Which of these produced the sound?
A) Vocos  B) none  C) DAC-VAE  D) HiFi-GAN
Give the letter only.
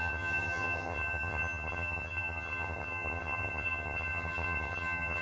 D